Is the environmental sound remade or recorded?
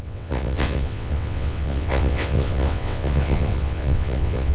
remade